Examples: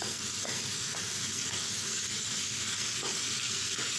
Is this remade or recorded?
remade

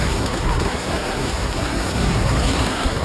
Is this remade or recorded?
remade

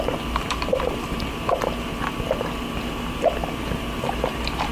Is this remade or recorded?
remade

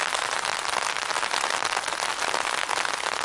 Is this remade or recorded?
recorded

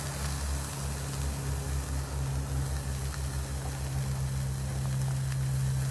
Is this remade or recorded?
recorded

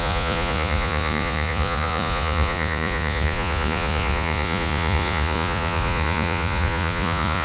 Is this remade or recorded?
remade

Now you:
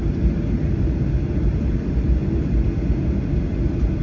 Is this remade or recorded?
recorded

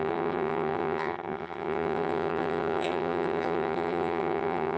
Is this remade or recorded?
remade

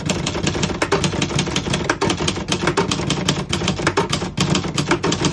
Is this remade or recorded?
recorded